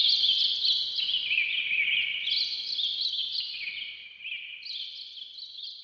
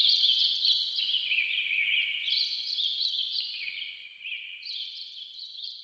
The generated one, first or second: second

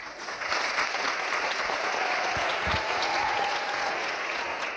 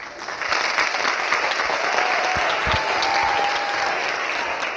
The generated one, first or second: first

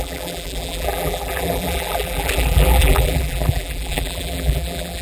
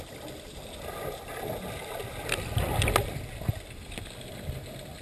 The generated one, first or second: first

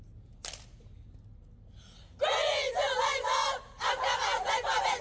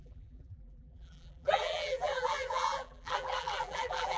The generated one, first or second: second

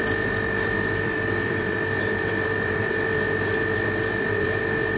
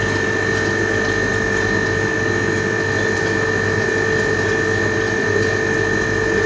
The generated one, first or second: first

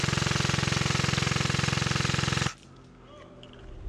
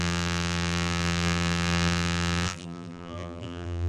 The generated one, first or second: second